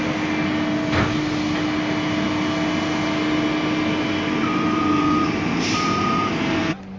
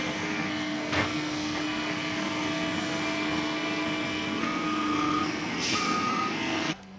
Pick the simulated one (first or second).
second